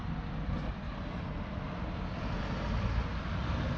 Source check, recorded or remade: recorded